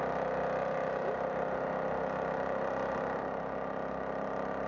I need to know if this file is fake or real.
real